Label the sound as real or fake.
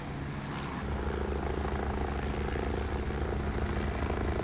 real